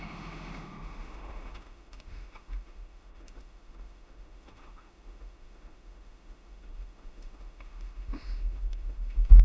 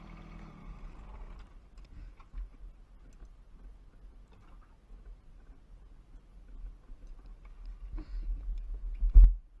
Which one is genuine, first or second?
second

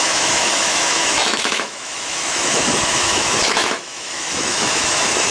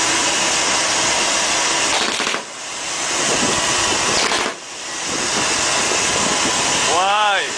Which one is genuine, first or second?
second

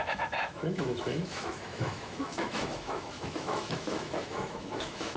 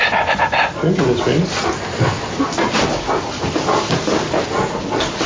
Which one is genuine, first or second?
second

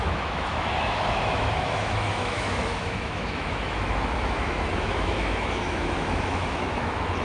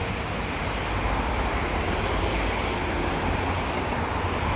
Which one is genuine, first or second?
second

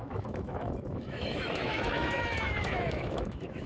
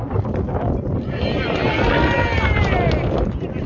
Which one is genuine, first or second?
second